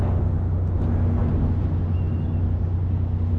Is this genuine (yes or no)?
yes